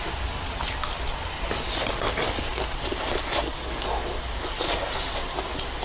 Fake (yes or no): no